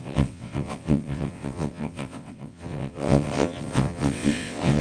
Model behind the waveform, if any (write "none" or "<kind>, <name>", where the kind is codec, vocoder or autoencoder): vocoder, WaveNeXt